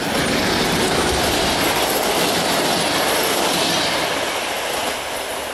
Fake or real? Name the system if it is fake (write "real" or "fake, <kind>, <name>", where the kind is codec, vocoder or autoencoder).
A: real